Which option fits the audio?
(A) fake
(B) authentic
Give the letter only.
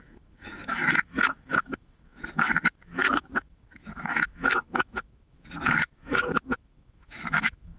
A